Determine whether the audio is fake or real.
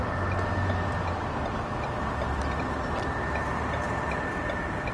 real